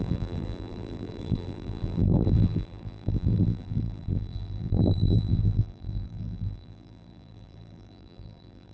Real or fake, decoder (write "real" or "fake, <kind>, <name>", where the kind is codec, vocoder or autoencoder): fake, vocoder, BigVGAN v2